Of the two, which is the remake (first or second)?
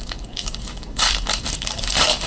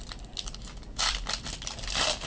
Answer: first